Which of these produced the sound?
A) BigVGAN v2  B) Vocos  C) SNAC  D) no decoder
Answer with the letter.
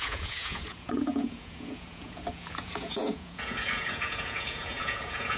B